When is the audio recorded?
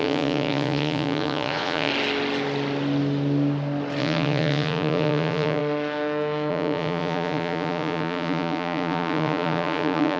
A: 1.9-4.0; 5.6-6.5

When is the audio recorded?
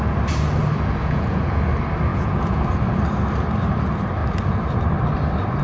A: 0.0-1.0; 1.6-2.1; 2.6-5.6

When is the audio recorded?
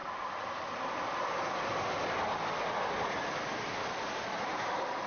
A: 0.0-5.1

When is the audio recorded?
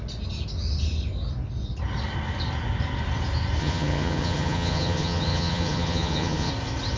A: 0.0-3.6; 6.5-7.0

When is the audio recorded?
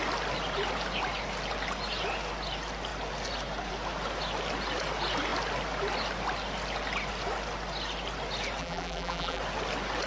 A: 0.0-8.6; 9.4-10.1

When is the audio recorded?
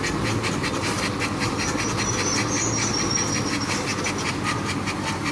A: 0.0-5.3